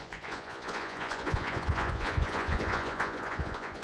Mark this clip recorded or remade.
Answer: remade